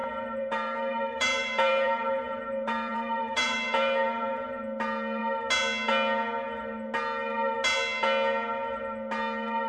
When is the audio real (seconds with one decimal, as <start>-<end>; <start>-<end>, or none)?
4.4-9.7